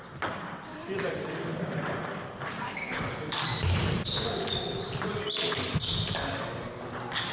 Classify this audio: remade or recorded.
recorded